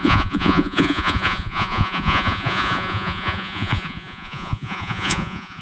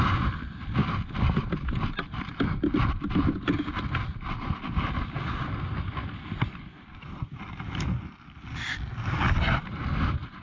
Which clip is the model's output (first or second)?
first